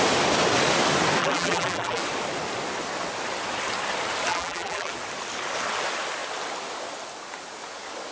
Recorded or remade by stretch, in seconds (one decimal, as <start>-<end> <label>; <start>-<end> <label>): 0.0-1.2 recorded; 1.2-2.0 remade; 2.0-4.3 recorded; 4.3-4.9 remade; 4.9-8.1 recorded